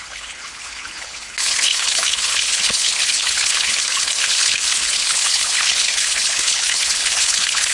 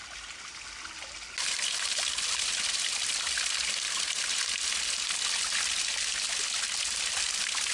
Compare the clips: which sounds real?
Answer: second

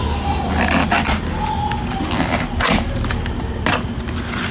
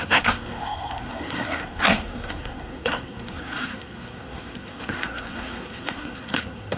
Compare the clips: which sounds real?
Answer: first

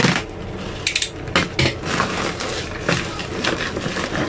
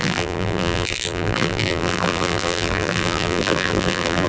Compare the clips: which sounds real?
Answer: first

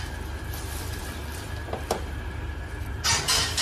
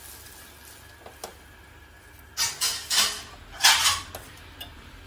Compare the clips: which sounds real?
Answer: second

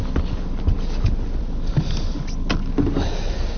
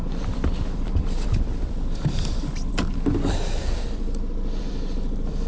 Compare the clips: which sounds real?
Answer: first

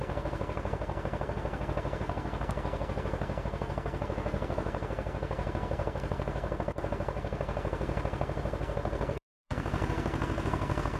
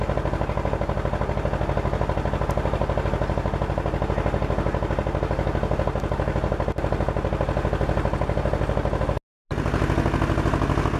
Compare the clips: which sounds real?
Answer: second